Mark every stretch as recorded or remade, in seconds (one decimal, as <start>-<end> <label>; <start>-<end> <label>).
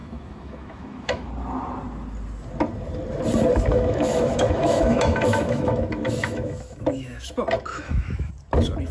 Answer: 0.0-1.3 remade; 1.3-3.7 recorded; 3.7-7.3 remade; 7.3-7.7 recorded; 7.7-8.3 remade; 8.3-8.9 recorded